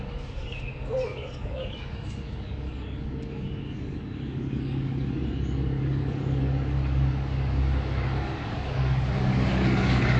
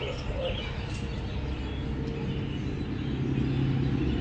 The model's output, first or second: first